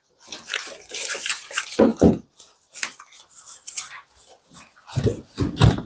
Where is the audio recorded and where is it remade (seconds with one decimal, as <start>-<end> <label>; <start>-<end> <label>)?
0.0-5.9 recorded